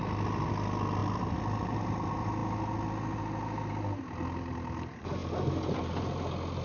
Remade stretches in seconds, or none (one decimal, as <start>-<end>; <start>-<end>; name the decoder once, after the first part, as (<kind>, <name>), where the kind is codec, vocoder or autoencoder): none